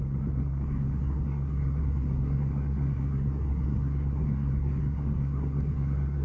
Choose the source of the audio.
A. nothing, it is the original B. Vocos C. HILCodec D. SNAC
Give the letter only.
D